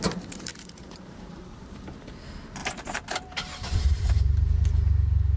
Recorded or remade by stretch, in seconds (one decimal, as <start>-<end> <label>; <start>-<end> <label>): 0.0-0.5 recorded; 0.5-1.8 remade; 1.8-2.6 recorded; 2.6-4.1 remade; 4.1-5.4 recorded